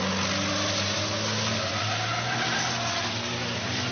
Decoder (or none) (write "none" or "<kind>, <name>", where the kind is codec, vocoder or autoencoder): none